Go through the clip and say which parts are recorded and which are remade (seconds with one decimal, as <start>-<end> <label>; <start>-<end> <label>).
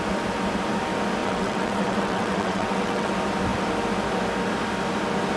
0.0-1.2 recorded; 1.2-3.1 remade; 3.1-5.4 recorded